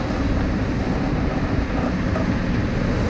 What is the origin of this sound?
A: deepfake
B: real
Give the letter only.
B